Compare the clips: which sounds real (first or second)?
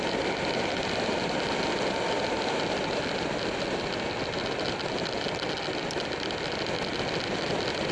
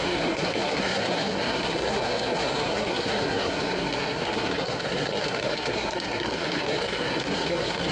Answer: first